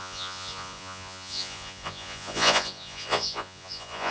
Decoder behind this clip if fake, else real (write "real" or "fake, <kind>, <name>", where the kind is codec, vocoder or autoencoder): fake, vocoder, Vocos